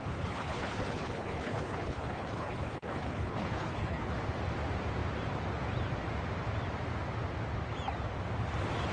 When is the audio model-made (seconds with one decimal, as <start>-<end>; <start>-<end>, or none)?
0.0-4.1